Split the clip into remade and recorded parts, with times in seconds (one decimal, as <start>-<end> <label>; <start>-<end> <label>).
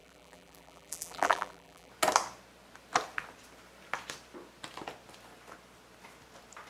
0.0-1.9 remade; 1.9-6.7 recorded